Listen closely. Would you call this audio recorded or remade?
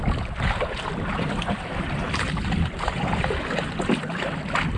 recorded